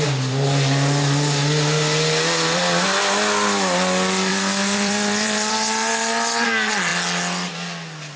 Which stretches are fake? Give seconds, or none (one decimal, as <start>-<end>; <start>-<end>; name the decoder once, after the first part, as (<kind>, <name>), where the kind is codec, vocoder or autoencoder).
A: 4.3-5.5 (vocoder, BigVGAN v2)